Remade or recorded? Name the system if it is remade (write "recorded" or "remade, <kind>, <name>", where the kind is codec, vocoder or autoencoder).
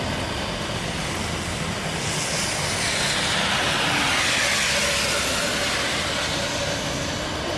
recorded